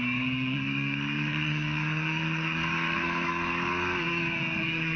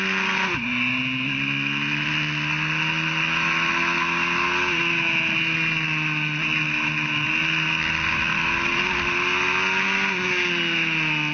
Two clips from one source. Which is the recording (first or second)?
second